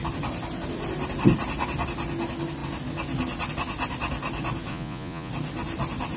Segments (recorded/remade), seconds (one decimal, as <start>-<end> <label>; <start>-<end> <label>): 0.0-4.7 recorded; 4.7-5.3 remade; 5.3-6.2 recorded